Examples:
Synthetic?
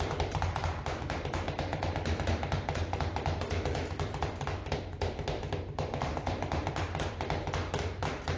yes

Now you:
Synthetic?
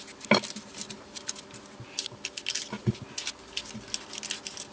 no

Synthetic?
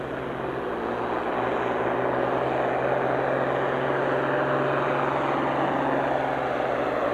no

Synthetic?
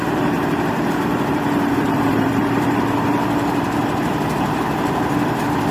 yes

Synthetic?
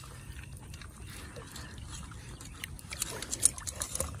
no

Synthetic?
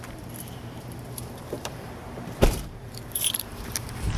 yes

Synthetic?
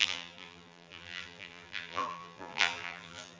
yes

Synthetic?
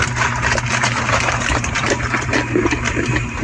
yes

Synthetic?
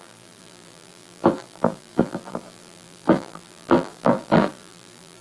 yes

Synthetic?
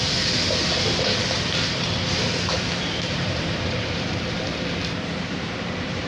yes